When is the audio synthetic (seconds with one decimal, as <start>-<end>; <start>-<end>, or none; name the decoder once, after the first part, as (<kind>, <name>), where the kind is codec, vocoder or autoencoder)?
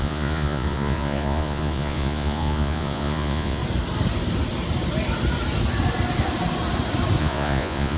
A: 0.0-3.6 (vocoder, Vocos); 7.2-8.0